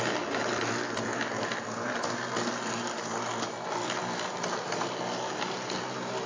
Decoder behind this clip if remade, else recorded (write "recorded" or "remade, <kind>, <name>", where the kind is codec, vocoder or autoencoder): recorded